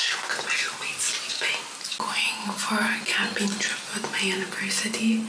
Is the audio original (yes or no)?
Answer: yes